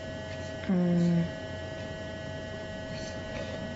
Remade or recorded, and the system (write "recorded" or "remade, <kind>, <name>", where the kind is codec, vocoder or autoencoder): recorded